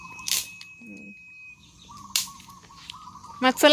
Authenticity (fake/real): real